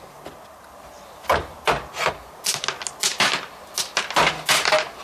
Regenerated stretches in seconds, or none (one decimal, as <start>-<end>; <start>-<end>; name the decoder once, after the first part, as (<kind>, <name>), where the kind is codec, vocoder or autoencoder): none